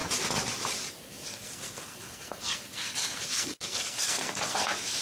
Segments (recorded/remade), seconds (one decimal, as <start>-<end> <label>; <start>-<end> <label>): 0.0-0.9 recorded; 0.9-5.0 remade

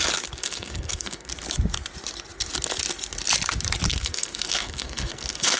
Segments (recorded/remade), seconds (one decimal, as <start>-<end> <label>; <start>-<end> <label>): 0.0-0.4 recorded; 0.4-1.3 remade; 1.3-3.9 recorded; 3.9-5.6 remade

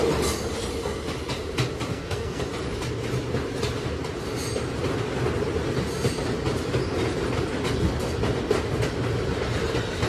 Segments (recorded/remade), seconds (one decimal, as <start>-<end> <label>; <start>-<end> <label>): 0.0-1.9 recorded; 1.9-2.4 remade; 2.4-10.1 recorded